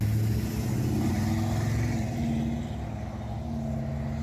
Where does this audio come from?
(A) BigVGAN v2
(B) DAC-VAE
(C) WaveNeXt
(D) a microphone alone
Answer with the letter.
D